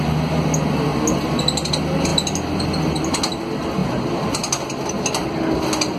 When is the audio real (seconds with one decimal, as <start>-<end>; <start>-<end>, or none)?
0.0-3.8; 4.3-6.0

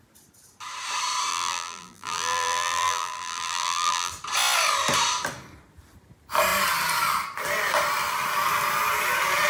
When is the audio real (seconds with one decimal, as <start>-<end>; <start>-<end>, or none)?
0.0-1.3; 4.1-9.5